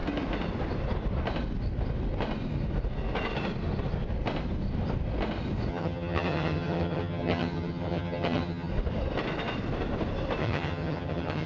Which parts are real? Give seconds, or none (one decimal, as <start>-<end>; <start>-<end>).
0.0-5.7; 8.7-10.4